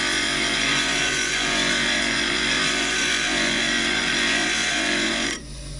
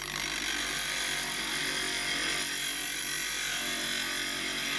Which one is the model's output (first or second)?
first